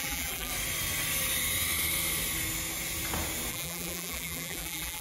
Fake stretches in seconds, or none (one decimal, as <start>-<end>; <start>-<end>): 0.0-0.5; 3.5-5.0